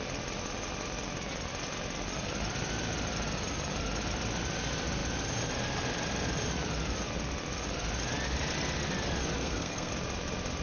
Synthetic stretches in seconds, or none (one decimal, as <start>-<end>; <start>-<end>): 9.4-9.9

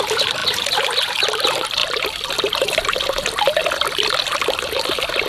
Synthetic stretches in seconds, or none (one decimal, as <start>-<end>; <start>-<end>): 0.0-3.6